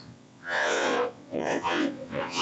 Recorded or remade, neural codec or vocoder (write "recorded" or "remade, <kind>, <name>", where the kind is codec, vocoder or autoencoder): remade, vocoder, WaveNeXt